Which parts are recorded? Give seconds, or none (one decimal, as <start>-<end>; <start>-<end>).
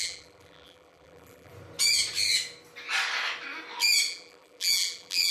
1.5-4.1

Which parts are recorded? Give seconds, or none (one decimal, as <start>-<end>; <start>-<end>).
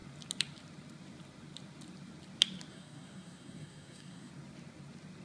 0.0-2.7; 4.3-5.2